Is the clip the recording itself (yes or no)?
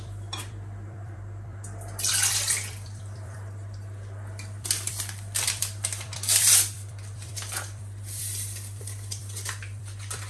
no